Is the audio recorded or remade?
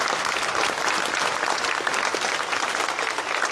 recorded